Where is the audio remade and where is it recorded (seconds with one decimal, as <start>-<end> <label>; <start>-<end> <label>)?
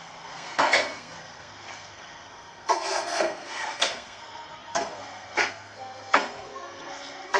0.0-7.4 remade